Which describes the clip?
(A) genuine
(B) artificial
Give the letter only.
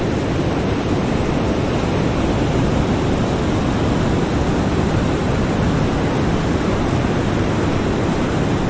A